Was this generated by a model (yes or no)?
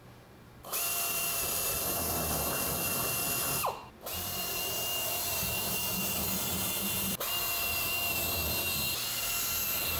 yes